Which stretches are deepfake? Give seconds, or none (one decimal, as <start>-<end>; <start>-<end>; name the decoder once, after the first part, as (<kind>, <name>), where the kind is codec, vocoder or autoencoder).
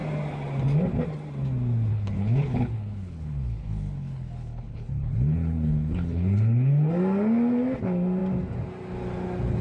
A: 1.9-6.9 (codec, HILCodec)